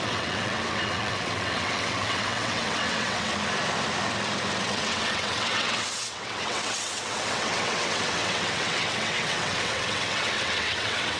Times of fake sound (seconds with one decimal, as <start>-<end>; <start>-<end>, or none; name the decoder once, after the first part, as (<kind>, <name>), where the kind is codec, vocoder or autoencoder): 0.0-3.3 (vocoder, WaveNeXt); 4.6-11.2